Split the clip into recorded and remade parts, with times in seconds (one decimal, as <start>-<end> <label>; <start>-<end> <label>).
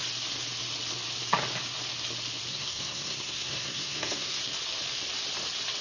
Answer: 0.0-2.5 recorded; 2.5-4.4 remade; 4.4-5.8 recorded